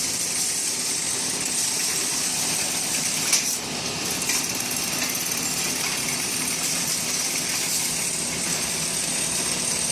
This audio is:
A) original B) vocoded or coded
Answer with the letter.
B